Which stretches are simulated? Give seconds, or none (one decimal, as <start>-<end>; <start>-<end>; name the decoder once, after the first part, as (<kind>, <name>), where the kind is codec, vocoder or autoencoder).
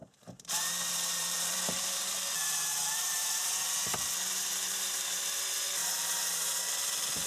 0.0-0.7 (vocoder, BigVGAN v2); 1.2-5.2; 5.8-6.6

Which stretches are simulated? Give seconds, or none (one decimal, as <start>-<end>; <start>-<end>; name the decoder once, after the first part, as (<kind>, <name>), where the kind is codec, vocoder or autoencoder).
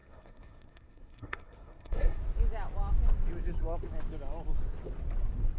0.0-2.2 (codec, SNAC)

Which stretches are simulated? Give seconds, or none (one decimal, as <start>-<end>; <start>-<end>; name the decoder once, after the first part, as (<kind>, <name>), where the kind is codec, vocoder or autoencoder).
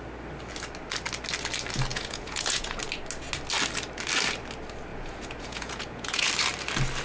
1.9-2.8 (vocoder, Vocos); 4.9-6.3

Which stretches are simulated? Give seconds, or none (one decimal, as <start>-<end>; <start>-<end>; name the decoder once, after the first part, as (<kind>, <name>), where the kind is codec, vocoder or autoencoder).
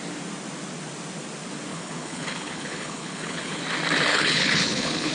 1.7-3.6 (codec, HILCodec); 4.1-5.1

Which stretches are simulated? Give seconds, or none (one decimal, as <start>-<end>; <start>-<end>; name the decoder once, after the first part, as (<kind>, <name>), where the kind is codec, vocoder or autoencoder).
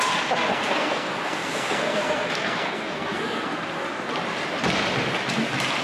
0.5-3.5 (codec, SNAC)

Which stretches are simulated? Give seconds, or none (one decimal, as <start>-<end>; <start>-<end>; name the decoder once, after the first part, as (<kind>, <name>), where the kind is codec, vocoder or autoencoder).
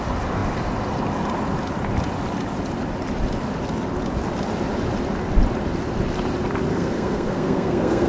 6.7-8.1 (codec, SNAC)